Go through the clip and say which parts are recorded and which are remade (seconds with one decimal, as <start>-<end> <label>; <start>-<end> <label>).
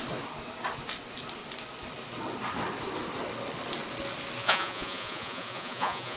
0.0-4.4 recorded; 4.4-6.2 remade